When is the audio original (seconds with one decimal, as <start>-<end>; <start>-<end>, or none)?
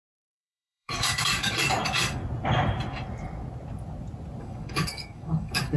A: 2.2-4.4